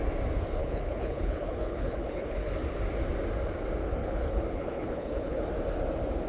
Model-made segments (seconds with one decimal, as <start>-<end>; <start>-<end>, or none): 0.6-2.5; 4.0-5.4